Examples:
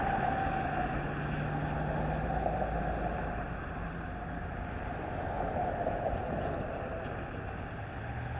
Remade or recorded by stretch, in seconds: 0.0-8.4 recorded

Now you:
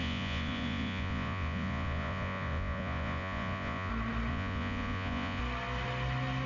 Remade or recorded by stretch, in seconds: 0.0-3.9 remade; 3.9-4.3 recorded; 4.3-5.4 remade; 5.4-6.5 recorded

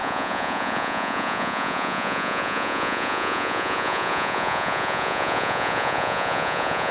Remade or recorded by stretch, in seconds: 0.0-6.9 remade

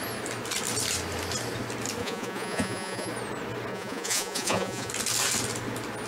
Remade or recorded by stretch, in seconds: 0.0-2.0 recorded; 2.0-3.1 remade; 3.1-3.7 recorded; 3.7-4.9 remade; 4.9-6.1 recorded